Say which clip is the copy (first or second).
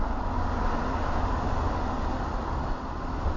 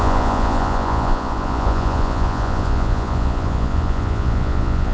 second